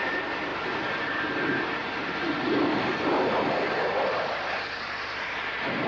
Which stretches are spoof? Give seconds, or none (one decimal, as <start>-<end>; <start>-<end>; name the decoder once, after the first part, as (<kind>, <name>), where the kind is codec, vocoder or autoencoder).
1.8-5.3 (vocoder, BigVGAN v2)